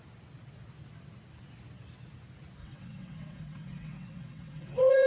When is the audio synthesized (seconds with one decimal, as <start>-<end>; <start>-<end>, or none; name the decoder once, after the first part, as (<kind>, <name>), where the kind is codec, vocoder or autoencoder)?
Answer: 2.6-5.1 (vocoder, WaveNeXt)